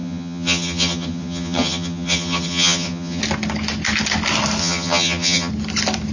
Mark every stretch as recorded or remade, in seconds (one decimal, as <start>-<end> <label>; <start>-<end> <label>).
0.0-3.2 remade; 3.2-4.6 recorded; 4.6-5.5 remade; 5.5-6.1 recorded